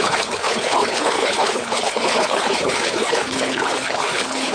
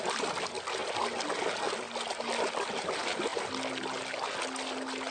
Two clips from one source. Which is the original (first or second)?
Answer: second